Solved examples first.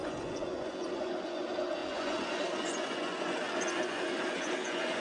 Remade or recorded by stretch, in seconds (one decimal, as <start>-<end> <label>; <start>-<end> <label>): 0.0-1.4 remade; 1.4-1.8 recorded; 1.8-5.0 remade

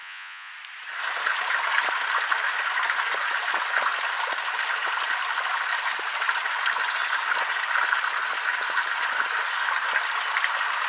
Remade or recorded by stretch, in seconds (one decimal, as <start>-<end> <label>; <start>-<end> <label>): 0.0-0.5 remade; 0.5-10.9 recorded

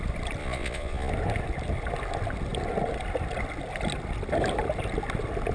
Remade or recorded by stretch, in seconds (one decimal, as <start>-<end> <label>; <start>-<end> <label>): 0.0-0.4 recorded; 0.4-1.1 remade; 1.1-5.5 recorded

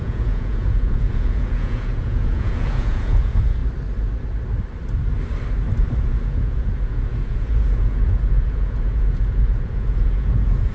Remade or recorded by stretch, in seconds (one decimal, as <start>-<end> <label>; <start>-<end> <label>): 0.0-3.6 remade; 3.6-6.0 recorded; 6.0-10.7 remade

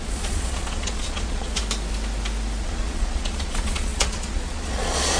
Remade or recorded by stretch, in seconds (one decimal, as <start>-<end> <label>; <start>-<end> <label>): 0.0-1.6 remade; 1.6-2.6 recorded; 2.6-5.2 remade

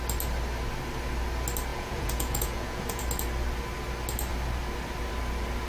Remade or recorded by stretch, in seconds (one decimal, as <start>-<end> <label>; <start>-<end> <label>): 0.0-1.7 recorded; 1.7-3.0 remade; 3.0-5.7 recorded

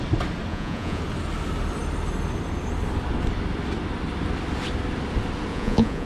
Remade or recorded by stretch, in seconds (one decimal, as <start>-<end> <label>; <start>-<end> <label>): 0.0-0.5 recorded; 0.5-1.0 remade; 1.0-5.5 recorded; 5.5-6.1 remade